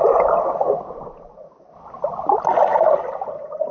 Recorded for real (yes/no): yes